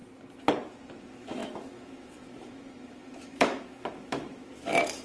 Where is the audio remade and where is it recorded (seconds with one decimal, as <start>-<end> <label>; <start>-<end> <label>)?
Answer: 0.0-1.0 recorded; 1.0-5.0 remade